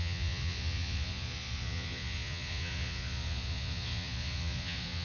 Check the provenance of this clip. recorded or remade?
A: remade